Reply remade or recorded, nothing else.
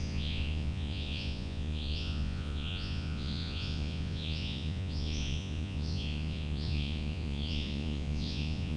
remade